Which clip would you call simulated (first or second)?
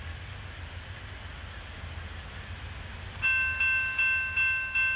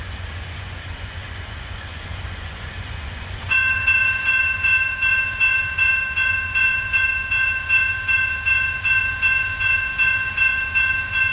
second